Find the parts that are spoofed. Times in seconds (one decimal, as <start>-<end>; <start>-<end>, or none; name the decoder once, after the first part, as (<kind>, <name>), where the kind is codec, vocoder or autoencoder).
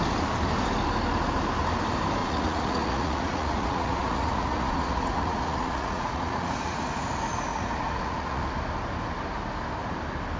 2.2-7.1 (vocoder, Vocos); 7.5-8.4